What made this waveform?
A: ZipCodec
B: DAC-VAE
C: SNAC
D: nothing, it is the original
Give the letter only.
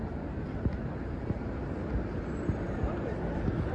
D